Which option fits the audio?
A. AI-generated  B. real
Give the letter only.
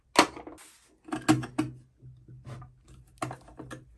B